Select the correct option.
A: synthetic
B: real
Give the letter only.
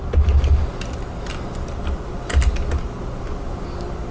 B